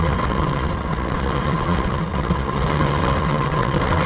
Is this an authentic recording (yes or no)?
no